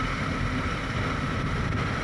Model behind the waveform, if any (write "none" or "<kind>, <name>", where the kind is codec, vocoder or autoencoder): none